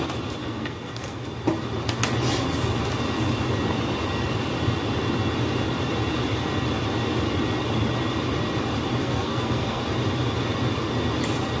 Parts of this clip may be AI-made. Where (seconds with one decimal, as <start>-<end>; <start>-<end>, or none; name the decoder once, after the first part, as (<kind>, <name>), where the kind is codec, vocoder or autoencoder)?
0.4-1.2 (codec, SNAC); 9.0-9.8

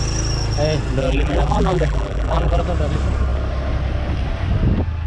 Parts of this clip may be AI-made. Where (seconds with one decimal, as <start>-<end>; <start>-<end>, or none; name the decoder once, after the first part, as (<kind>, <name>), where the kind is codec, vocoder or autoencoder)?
1.0-2.6 (vocoder, BigVGAN v2)

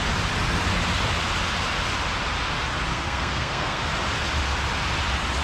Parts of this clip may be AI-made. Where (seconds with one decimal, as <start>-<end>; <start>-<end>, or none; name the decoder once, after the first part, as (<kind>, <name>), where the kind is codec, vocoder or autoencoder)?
2.9-3.8 (codec, SNAC)

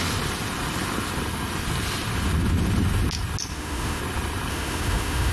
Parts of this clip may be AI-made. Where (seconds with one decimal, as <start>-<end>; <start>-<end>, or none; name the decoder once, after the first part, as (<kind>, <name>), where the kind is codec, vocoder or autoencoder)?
3.5-4.0 (autoencoder, DAC-VAE); 4.5-5.3

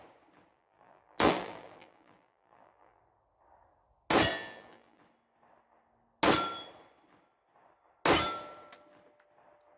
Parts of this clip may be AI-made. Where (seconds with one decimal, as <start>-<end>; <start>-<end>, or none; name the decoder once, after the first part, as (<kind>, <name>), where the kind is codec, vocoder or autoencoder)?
0.5-3.0 (vocoder, BigVGAN v2); 4.3-5.0

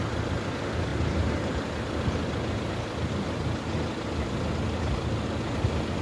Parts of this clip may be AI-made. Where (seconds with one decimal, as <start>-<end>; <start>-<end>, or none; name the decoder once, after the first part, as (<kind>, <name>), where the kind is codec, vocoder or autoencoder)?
none

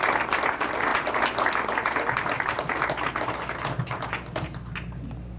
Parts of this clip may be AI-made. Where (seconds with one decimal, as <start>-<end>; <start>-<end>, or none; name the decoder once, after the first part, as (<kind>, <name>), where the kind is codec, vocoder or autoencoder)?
none

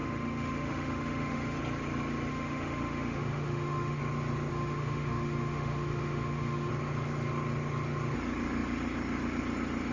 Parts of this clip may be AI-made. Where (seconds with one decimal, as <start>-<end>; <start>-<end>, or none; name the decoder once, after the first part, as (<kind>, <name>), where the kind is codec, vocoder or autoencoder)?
0.0-1.6 (autoencoder, DAC-VAE); 2.3-4.0; 4.5-6.7